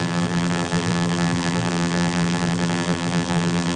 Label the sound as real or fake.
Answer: fake